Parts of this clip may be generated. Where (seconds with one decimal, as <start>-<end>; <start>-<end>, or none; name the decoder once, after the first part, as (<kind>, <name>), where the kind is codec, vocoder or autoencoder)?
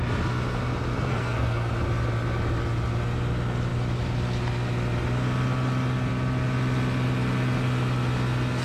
1.1-1.7 (codec, SNAC)